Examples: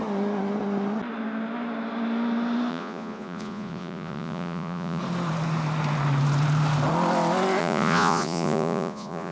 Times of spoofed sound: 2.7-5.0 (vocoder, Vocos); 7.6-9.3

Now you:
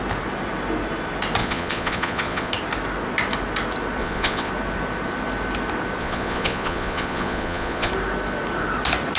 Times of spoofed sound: 1.4-2.5 (vocoder, Vocos); 4.0-4.5; 6.0-7.9

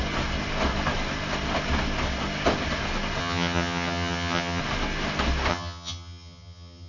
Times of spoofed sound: 3.2-4.6 (vocoder, HiFi-GAN); 5.5-6.9

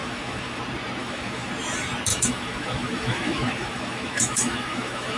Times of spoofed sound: 0.0-0.6 (autoencoder, DAC-VAE); 1.0-1.5; 2.1-5.2

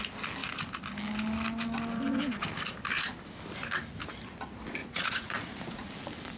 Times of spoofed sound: 4.8-5.9 (vocoder, Vocos)